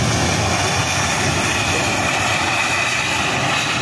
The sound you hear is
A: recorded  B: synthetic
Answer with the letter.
A